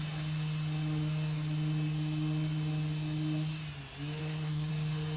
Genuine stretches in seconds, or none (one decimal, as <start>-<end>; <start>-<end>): 0.0-4.2; 4.7-5.2